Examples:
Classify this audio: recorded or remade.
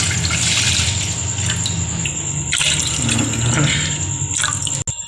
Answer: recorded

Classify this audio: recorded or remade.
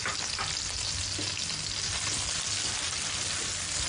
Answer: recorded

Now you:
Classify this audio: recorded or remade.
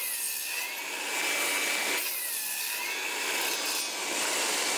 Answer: recorded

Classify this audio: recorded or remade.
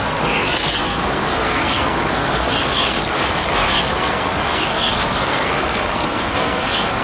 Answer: remade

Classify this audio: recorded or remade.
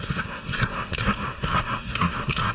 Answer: remade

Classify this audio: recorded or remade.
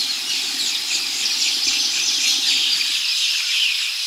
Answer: recorded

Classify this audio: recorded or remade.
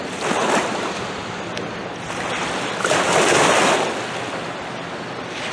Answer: recorded